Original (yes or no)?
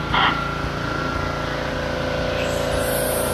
yes